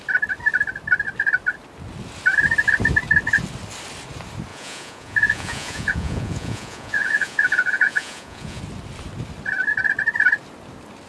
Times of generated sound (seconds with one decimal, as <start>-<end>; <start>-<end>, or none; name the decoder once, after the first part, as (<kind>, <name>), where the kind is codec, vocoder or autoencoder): 4.5-8.6 (vocoder, Vocos)